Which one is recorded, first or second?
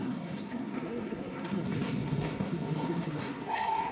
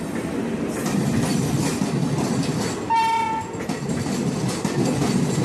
second